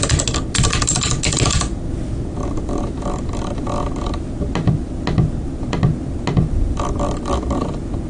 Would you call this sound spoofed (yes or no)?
no